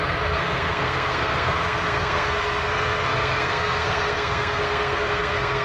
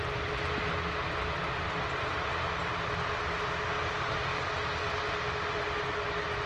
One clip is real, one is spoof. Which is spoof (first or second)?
first